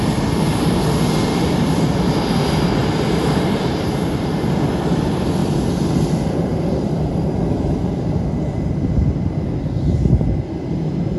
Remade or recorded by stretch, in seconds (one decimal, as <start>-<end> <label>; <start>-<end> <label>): 0.0-2.8 recorded; 2.8-4.7 remade; 4.7-6.5 recorded; 6.5-8.7 remade; 8.7-11.2 recorded